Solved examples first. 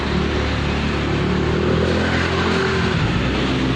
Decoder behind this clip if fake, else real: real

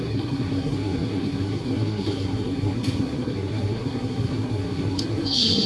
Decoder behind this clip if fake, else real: fake, codec, SNAC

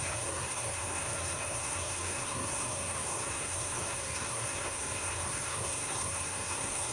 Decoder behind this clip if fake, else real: fake, codec, SNAC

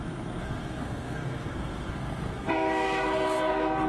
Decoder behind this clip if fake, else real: fake, codec, SNAC